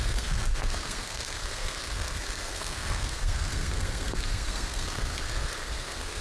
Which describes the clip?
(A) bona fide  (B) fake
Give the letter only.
B